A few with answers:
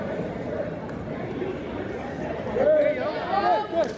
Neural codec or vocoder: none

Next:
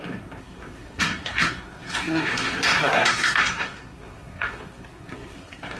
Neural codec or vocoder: codec, SNAC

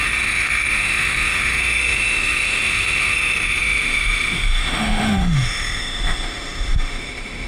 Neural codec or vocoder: autoencoder, DAC-VAE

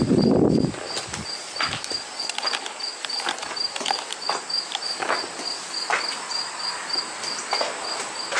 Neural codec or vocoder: none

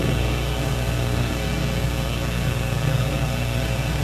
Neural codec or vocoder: codec, SNAC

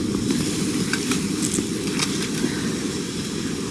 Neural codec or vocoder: none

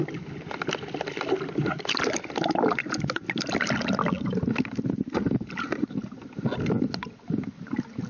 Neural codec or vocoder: none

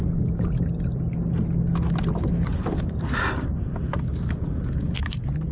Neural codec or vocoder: none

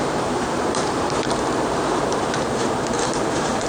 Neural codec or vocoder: vocoder, BigVGAN v2